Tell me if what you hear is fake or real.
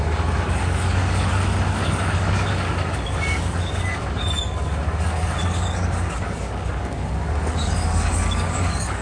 fake